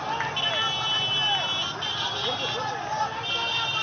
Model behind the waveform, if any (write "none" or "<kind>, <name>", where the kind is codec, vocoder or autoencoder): none